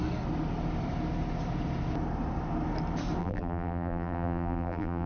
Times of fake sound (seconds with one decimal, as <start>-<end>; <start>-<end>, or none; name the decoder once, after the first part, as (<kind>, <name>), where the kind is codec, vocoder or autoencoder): 3.2-5.1 (vocoder, BigVGAN v2)